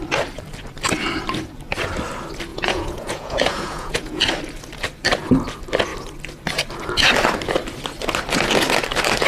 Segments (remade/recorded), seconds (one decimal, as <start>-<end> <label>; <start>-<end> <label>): 0.0-2.5 recorded; 2.5-4.2 remade; 4.2-9.3 recorded